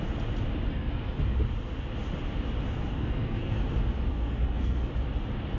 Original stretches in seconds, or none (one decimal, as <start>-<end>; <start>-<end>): 0.0-0.7; 1.2-2.9; 3.6-4.1; 4.9-5.6